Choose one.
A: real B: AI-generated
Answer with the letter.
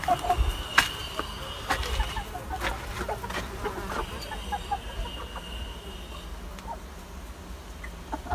A